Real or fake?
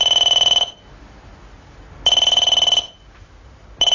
real